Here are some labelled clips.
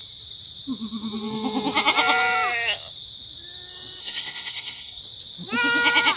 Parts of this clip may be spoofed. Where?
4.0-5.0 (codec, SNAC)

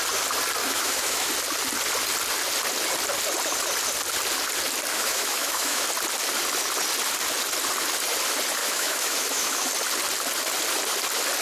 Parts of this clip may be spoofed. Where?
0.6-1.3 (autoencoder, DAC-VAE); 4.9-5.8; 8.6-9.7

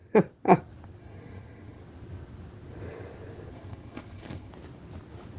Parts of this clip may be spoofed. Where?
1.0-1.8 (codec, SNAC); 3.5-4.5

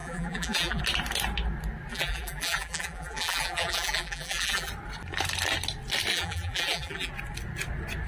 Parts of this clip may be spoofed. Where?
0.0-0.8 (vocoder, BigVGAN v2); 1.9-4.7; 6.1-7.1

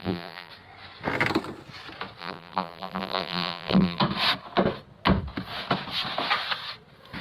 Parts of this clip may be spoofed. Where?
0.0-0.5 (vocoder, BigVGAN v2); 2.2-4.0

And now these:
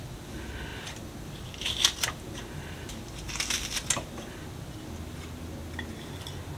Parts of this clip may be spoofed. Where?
none